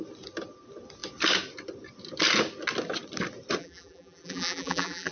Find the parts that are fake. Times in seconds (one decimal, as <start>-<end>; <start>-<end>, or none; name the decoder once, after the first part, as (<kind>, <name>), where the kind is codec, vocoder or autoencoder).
3.6-5.1 (vocoder, BigVGAN v2)